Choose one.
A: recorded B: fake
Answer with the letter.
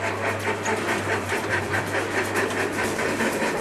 A